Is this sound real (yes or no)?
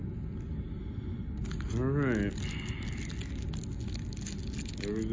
yes